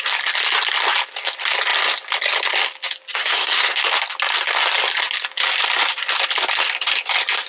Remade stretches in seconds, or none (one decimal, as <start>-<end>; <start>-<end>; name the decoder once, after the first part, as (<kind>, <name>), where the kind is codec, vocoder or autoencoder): 3.2-3.8 (codec, SNAC)